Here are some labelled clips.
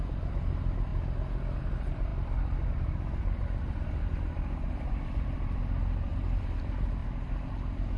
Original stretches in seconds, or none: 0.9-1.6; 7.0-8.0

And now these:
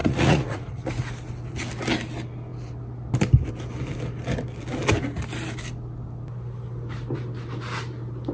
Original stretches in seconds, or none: 0.9-8.3

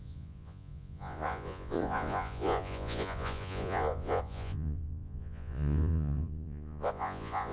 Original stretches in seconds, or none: none

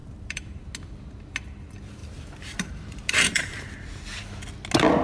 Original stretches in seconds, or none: 0.6-2.0; 3.6-5.0